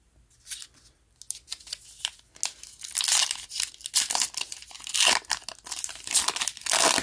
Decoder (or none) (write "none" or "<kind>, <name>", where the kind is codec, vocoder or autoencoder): none